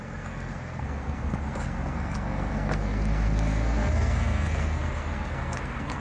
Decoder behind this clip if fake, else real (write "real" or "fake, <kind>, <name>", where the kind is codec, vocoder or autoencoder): fake, codec, SNAC